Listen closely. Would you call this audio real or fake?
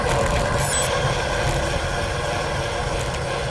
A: real